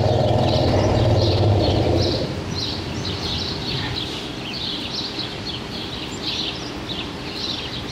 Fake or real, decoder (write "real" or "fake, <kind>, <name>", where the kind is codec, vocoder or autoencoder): fake, vocoder, BigVGAN v2